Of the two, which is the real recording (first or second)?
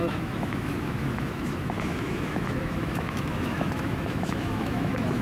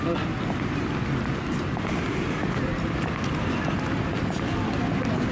second